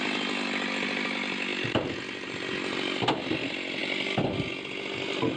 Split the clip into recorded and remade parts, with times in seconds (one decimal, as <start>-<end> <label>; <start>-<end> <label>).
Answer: 0.0-1.5 recorded; 1.5-2.5 remade; 2.5-5.4 recorded